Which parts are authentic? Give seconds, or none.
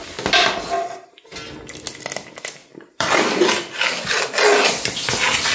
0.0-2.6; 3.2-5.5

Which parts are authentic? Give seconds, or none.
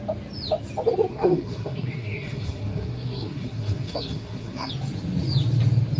0.0-1.1; 4.7-6.0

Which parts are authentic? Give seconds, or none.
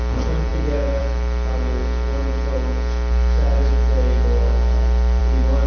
0.0-5.7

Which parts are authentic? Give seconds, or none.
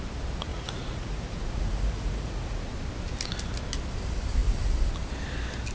0.0-0.5; 2.7-5.7